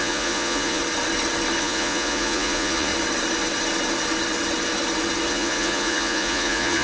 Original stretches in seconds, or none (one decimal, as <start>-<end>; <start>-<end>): 0.8-1.6; 2.9-5.3